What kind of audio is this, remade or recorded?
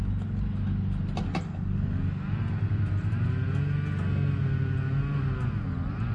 recorded